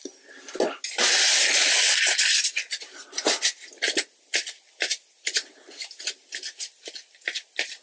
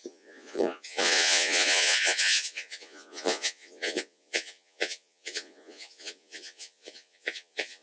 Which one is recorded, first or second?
first